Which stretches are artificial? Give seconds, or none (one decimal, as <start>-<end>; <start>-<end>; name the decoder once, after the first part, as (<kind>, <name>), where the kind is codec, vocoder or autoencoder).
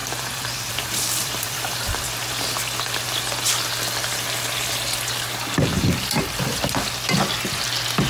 0.0-2.1 (vocoder, BigVGAN v2); 5.7-6.8